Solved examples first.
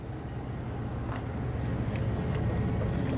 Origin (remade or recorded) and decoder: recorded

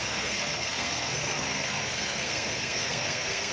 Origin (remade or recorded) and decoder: remade, codec, SNAC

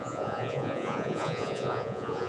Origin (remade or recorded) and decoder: remade, vocoder, Vocos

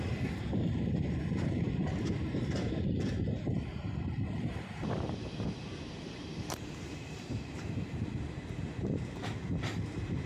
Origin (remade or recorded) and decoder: remade, vocoder, BigVGAN v2